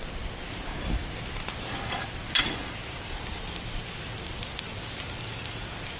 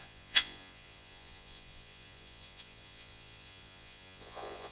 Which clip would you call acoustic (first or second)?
first